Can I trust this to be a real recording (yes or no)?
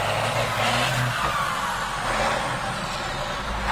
yes